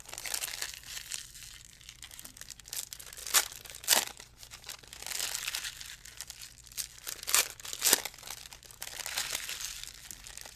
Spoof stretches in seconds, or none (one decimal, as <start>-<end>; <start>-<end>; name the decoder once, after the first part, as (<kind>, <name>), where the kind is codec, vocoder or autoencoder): none